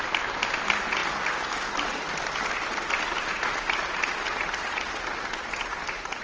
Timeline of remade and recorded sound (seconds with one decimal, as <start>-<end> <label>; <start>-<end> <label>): 0.0-6.2 recorded